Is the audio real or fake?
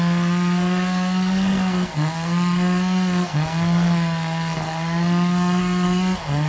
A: fake